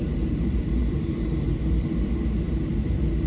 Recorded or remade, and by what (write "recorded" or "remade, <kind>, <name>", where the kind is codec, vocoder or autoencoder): remade, vocoder, BigVGAN v2